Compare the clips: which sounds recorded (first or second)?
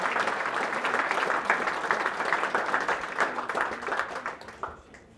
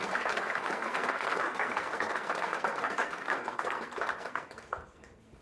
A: first